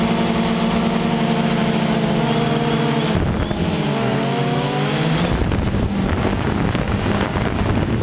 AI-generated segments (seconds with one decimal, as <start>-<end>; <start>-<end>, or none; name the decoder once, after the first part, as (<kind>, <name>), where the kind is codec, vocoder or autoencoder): 4.3-5.1 (codec, DAC); 6.3-7.6

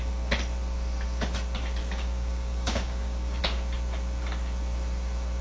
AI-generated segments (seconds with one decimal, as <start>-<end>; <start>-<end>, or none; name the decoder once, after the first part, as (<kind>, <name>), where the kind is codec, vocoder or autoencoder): 1.8-3.4 (codec, DAC)

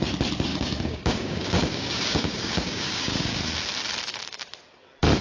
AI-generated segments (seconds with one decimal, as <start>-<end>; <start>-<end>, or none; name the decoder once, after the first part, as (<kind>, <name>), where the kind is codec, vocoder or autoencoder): 0.5-3.4 (codec, DAC)

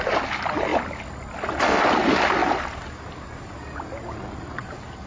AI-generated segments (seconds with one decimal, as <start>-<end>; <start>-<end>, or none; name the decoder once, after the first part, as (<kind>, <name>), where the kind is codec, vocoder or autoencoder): none

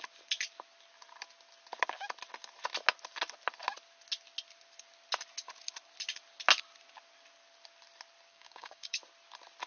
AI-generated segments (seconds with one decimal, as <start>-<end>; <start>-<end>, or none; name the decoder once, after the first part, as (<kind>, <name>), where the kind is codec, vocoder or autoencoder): 8.3-9.0 (codec, DAC)

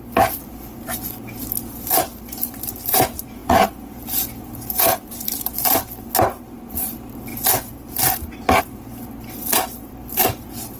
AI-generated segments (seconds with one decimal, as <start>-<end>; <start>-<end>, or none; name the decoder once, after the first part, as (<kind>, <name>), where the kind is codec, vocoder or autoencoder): none